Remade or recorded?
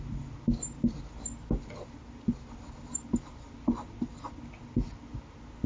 recorded